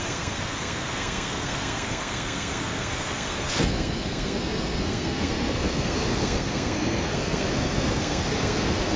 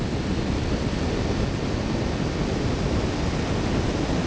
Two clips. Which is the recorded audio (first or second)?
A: second